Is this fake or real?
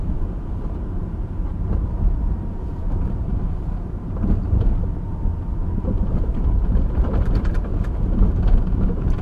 fake